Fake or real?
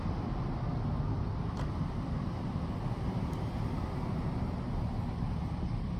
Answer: real